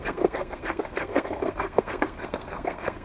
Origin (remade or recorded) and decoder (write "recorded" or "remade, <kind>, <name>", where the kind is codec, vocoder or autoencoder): remade, codec, SNAC